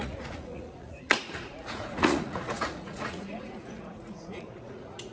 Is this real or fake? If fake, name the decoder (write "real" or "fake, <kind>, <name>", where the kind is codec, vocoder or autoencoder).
fake, vocoder, Vocos